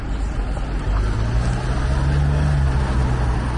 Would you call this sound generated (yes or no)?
no